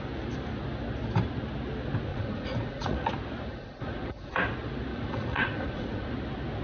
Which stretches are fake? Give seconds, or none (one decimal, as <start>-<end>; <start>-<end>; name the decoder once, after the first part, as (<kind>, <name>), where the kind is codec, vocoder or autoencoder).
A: 2.1-3.1 (vocoder, Vocos); 3.5-4.3; 4.9-6.1